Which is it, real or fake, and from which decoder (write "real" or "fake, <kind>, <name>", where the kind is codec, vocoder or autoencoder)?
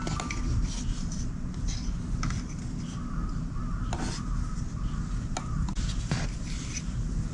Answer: real